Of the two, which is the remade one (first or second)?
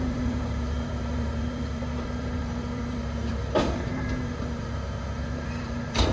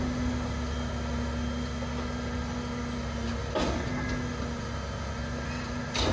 first